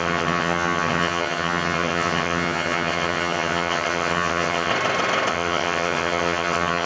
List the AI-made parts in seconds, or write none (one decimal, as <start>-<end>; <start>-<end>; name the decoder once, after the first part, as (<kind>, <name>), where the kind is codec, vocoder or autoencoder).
0.0-4.7 (vocoder, HiFi-GAN); 5.3-6.9